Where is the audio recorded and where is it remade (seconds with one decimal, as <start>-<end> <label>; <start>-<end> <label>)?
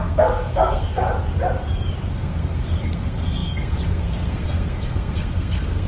0.0-1.0 remade; 1.0-2.1 recorded; 2.1-5.9 remade